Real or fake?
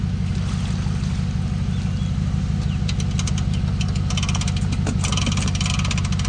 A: real